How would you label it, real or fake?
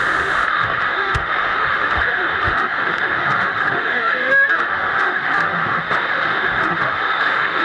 fake